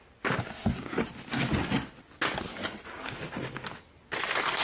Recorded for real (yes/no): yes